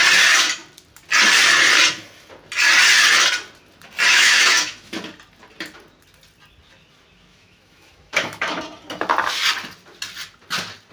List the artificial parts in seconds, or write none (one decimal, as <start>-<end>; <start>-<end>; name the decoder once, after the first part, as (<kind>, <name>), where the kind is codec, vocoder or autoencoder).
4.1-5.0 (autoencoder, DAC-VAE); 7.3-8.6